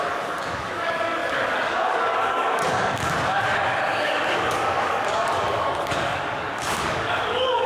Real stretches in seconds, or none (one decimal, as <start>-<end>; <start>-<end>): none